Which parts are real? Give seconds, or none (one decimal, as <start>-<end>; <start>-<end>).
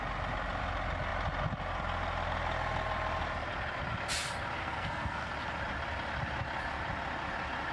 0.0-4.6; 5.3-7.7